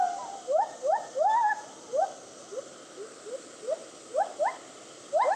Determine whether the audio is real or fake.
real